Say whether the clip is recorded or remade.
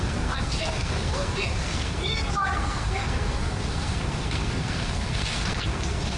remade